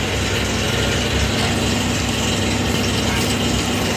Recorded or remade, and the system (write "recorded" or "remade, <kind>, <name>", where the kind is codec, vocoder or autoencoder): recorded